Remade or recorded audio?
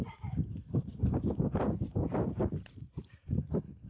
recorded